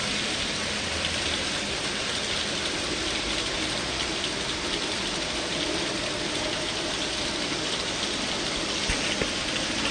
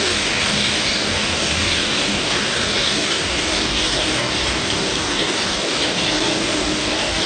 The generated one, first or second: second